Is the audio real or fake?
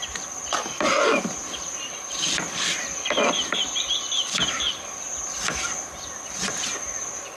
real